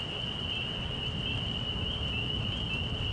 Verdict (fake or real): real